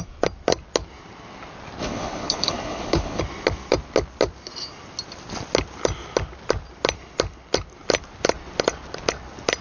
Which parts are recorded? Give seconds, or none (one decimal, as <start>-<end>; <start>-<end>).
0.0-1.8; 3.2-9.6